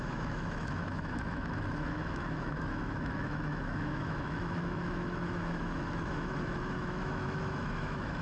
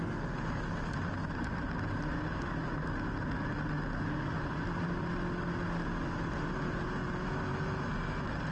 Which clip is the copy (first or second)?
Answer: first